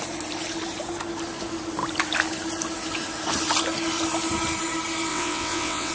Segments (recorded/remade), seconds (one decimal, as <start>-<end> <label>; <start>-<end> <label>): 0.0-5.1 recorded; 5.1-5.9 remade